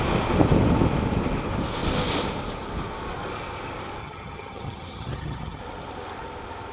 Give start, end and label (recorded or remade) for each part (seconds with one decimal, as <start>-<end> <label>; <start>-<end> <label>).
0.0-4.0 recorded; 4.0-5.6 remade; 5.6-6.7 recorded